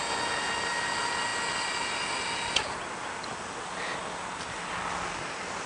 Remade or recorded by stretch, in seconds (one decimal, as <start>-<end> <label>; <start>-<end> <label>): 0.0-5.7 recorded